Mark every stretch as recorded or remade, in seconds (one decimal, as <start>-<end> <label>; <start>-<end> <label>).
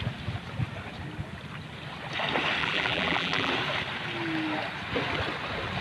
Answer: 0.0-2.6 recorded; 2.6-3.5 remade; 3.5-5.8 recorded